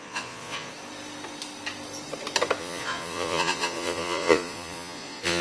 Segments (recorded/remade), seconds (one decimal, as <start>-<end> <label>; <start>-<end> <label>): 0.0-0.7 remade; 0.7-2.6 recorded; 2.6-5.4 remade